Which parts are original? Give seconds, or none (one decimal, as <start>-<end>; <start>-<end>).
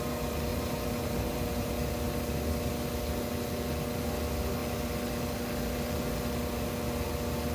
0.0-0.5; 1.7-7.5